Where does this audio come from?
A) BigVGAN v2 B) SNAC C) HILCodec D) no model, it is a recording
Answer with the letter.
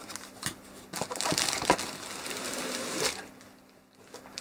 D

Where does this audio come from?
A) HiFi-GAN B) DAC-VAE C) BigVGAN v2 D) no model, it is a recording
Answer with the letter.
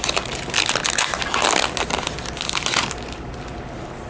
D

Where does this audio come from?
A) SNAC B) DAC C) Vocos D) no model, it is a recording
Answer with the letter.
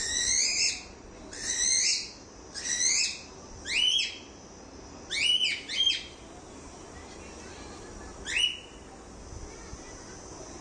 D